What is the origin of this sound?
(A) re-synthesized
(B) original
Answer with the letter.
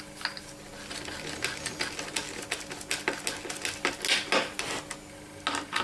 B